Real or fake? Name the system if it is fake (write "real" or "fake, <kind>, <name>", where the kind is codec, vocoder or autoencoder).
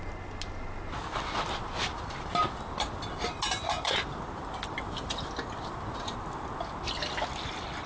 real